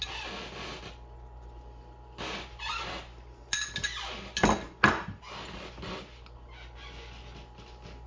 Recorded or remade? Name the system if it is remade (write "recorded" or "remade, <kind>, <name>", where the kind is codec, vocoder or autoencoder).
recorded